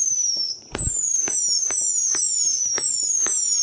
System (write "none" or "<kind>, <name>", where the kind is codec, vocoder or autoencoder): vocoder, BigVGAN v2